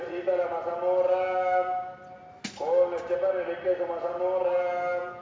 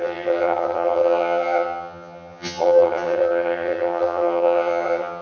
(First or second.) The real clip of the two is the first